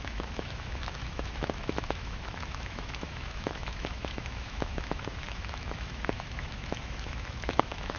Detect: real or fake fake